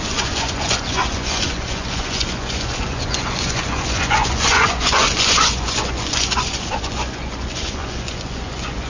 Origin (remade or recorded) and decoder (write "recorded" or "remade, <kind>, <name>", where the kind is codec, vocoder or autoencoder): remade, vocoder, Vocos